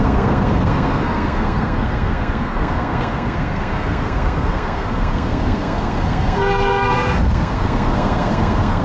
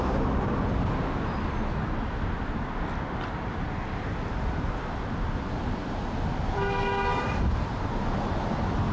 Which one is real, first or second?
second